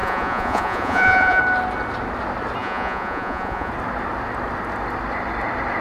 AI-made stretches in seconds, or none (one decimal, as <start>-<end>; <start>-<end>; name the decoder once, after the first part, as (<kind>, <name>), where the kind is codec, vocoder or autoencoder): 0.0-1.4 (vocoder, Vocos); 2.6-3.7